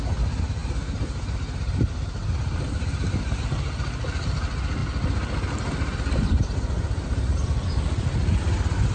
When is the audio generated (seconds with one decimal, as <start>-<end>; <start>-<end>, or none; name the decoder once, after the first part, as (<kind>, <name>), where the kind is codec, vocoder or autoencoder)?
none